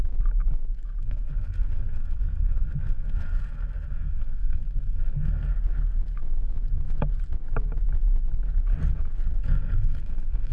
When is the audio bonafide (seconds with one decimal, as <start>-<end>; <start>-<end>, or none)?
0.0-1.0; 5.5-9.4